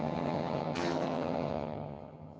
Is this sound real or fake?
fake